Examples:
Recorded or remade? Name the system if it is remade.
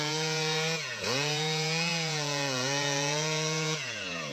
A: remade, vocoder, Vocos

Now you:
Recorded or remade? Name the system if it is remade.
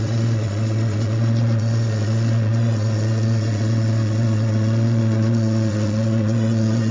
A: remade, vocoder, Vocos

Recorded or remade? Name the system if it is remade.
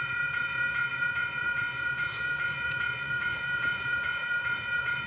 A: remade, vocoder, Vocos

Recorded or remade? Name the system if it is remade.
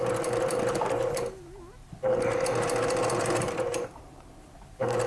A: recorded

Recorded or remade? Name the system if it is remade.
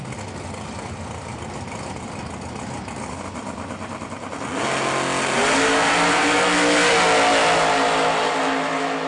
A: recorded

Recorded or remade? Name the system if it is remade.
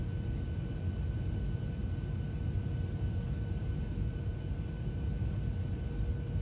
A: recorded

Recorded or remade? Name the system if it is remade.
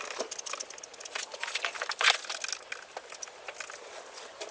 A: recorded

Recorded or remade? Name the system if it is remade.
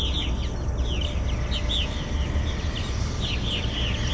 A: recorded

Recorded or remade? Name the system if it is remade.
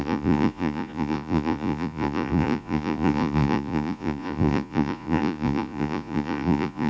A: remade, vocoder, Vocos